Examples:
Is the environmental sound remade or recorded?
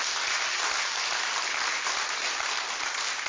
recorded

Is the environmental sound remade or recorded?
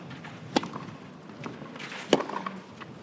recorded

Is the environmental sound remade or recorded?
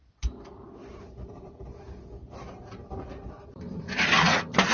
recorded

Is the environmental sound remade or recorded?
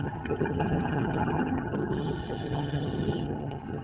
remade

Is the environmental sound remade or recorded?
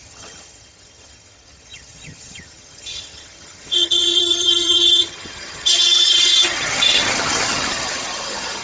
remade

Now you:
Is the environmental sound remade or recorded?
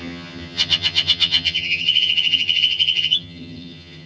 remade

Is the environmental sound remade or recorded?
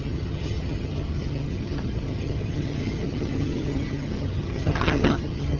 remade